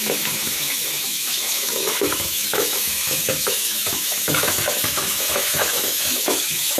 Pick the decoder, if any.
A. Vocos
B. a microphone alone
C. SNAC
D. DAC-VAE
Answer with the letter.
D